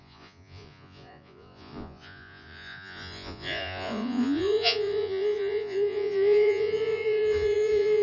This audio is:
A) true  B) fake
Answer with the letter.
B